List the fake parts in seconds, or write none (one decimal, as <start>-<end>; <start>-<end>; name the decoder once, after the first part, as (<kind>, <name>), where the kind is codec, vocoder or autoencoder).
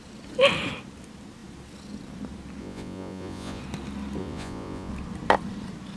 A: 2.6-3.6 (vocoder, Vocos); 4.2-4.9